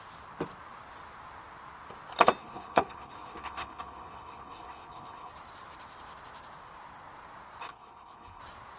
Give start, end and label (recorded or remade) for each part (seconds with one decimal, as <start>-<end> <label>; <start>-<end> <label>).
0.0-2.4 recorded; 2.4-5.3 remade; 5.3-7.6 recorded; 7.6-8.4 remade; 8.4-8.8 recorded